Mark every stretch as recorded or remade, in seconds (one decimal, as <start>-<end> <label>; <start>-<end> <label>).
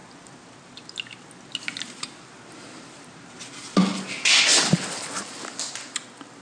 0.0-6.4 recorded